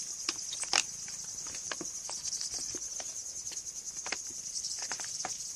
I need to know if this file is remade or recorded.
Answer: recorded